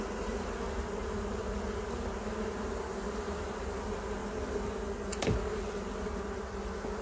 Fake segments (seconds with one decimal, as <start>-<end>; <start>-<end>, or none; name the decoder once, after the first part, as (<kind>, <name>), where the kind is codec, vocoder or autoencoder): none